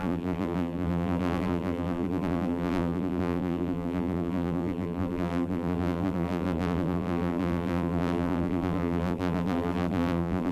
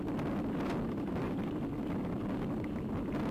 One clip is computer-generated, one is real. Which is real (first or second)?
second